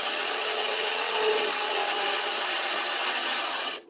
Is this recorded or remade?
remade